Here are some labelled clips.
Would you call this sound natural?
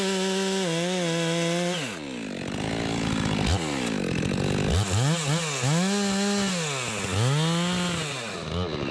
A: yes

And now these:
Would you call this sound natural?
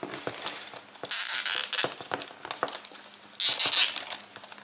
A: yes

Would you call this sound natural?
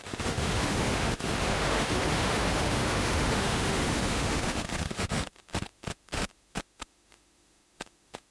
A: no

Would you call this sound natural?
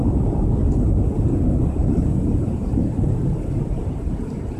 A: yes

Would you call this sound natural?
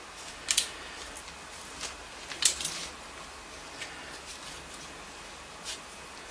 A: yes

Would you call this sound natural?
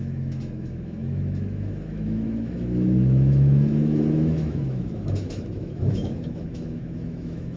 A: no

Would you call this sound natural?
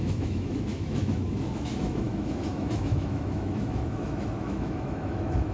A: no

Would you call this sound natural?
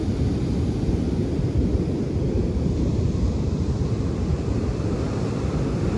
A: yes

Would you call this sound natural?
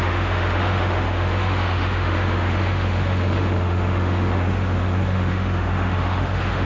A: no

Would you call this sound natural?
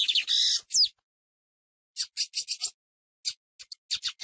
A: yes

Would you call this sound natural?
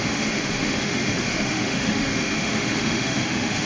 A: no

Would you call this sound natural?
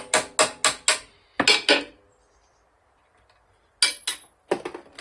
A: yes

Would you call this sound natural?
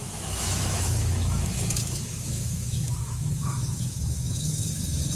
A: no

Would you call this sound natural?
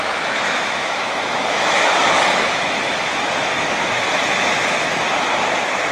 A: no